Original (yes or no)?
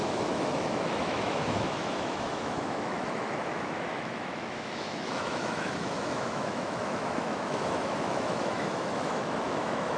no